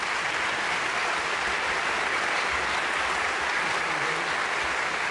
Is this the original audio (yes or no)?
yes